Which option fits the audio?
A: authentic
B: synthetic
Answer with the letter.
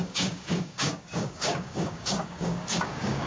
B